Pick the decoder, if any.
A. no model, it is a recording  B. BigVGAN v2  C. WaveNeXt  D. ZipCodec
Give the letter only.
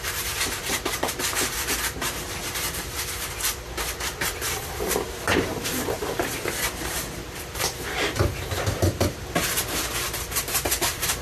B